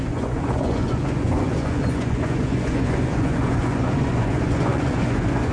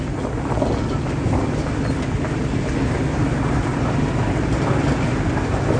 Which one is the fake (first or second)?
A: first